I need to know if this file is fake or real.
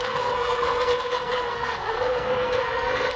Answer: fake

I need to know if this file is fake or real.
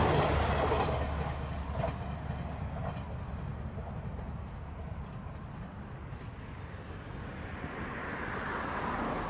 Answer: real